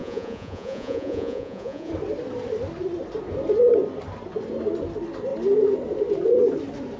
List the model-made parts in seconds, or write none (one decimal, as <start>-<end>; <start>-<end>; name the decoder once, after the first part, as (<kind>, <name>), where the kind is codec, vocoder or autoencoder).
0.0-1.9 (vocoder, Vocos)